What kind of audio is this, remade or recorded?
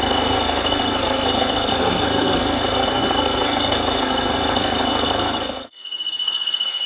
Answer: remade